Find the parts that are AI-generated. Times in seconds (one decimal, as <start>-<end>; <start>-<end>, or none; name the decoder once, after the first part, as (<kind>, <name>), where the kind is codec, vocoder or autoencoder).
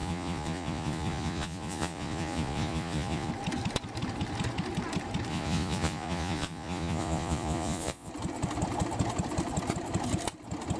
0.0-3.3 (vocoder, Vocos); 5.3-8.1